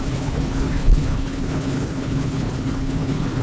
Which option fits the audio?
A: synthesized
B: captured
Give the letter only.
A